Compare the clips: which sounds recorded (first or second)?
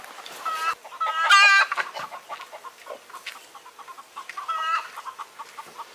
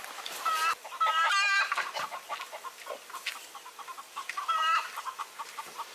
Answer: first